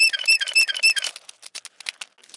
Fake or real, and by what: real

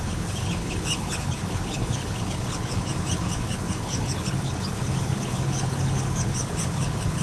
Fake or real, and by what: fake, codec, HILCodec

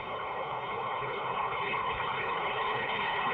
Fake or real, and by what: fake, codec, HILCodec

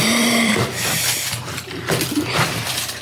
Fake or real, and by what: fake, vocoder, BigVGAN v2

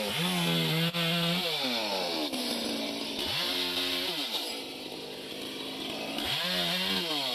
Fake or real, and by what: real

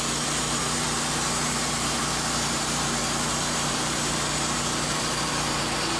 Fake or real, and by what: fake, vocoder, BigVGAN v2